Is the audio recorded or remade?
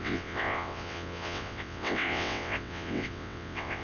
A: remade